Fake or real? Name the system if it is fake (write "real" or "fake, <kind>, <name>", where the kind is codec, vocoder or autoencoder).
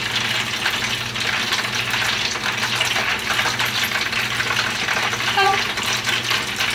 real